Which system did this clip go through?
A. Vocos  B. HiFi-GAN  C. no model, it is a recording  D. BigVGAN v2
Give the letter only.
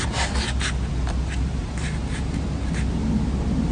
C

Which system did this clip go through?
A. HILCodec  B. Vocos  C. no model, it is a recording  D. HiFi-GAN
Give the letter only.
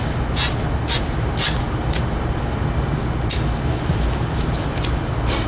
C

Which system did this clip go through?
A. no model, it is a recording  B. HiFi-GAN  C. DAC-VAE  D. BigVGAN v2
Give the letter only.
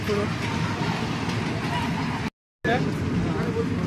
A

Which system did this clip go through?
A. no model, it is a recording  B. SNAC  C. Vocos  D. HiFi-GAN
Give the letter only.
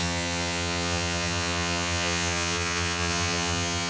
D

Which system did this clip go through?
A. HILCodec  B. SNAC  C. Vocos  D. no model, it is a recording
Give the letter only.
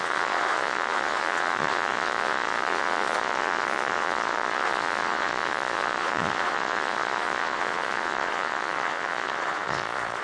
C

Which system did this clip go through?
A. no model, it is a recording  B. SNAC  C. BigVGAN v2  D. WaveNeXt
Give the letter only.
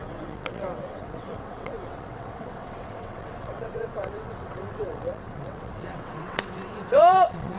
D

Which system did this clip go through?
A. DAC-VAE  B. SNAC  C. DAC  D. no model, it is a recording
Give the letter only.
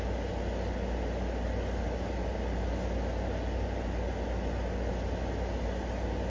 D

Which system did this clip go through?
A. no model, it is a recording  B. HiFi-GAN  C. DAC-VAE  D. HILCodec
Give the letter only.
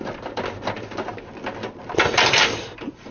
A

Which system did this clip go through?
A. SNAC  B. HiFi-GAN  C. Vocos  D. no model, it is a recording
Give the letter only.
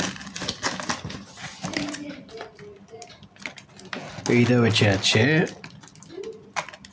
D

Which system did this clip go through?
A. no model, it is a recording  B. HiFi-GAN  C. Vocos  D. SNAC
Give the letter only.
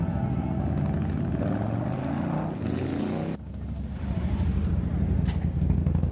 A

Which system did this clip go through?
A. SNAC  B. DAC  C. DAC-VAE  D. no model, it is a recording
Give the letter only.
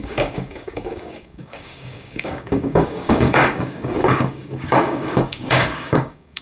B